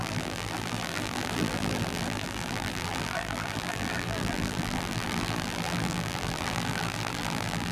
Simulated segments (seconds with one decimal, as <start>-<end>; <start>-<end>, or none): 0.0-7.7